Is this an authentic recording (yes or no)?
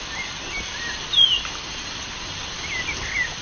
yes